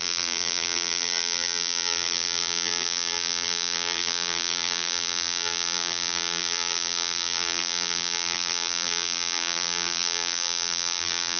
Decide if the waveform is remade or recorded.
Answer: remade